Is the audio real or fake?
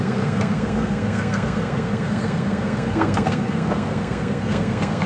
fake